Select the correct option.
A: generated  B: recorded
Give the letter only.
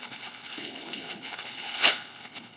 A